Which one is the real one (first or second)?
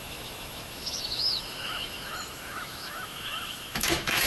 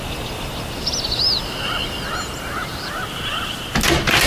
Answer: second